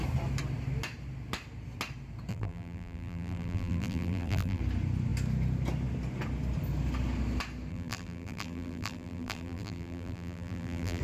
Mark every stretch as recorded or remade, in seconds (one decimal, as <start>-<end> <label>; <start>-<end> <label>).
0.0-2.3 recorded; 2.3-4.6 remade; 4.6-7.7 recorded; 7.7-11.0 remade